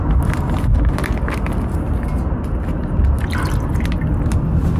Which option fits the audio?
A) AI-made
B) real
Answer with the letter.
B